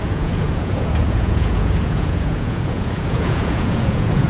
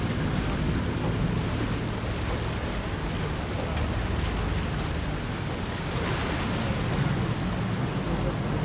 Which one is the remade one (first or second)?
first